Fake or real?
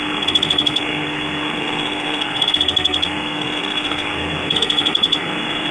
fake